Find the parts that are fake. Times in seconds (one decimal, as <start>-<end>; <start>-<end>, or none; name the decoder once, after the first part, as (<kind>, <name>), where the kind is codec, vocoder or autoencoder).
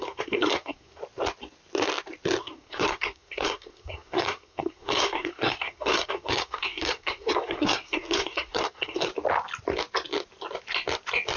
0.0-1.0 (codec, SNAC); 2.4-9.1